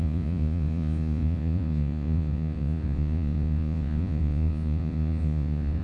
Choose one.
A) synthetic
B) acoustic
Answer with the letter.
A